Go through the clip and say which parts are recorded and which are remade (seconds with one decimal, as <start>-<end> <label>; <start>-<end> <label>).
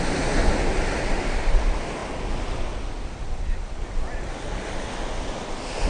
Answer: 0.0-5.9 recorded